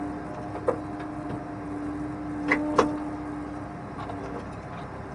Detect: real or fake real